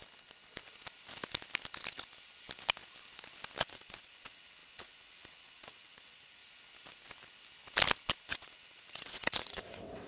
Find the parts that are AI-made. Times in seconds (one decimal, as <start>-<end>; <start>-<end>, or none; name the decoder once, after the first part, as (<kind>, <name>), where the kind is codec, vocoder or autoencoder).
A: 3.6-6.4 (vocoder, WaveNeXt); 8.3-10.1